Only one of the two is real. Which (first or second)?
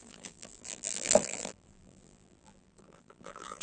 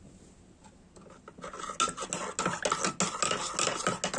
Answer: second